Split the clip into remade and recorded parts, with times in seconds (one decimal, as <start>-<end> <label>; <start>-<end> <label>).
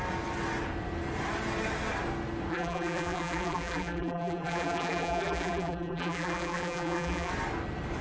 0.0-2.5 recorded; 2.5-7.3 remade; 7.3-8.0 recorded